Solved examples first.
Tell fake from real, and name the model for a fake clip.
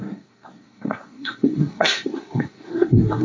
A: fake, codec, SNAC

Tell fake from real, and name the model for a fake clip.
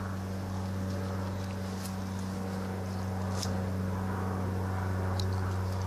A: real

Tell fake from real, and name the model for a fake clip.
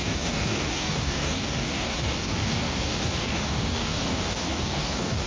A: fake, codec, DAC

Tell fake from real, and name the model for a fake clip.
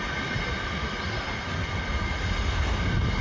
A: real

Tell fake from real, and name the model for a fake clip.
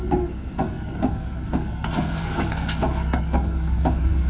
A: fake, codec, SNAC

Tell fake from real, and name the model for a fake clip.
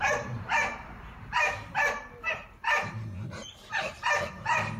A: fake, vocoder, BigVGAN v2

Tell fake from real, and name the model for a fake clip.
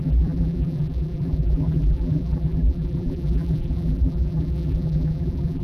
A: fake, vocoder, BigVGAN v2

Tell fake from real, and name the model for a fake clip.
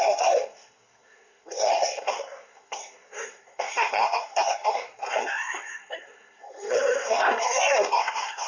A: fake, codec, SNAC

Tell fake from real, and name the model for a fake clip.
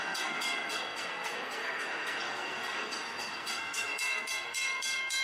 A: fake, codec, SNAC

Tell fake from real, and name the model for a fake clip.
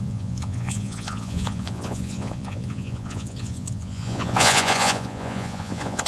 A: fake, vocoder, Vocos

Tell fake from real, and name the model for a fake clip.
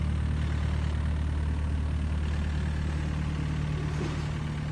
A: real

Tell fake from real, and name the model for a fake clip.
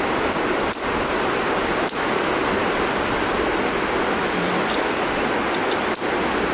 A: real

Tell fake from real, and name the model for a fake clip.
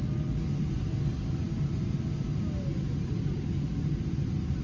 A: real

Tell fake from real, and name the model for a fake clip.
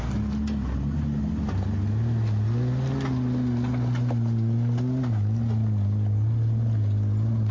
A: real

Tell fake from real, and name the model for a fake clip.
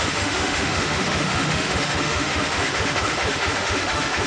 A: fake, autoencoder, DAC-VAE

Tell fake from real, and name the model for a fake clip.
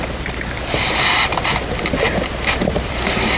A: fake, vocoder, BigVGAN v2